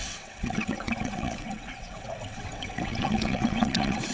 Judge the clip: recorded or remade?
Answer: remade